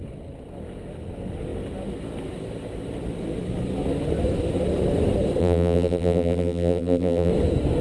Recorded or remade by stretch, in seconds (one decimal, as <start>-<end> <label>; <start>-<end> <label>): 0.0-5.4 recorded; 5.4-7.3 remade; 7.3-7.8 recorded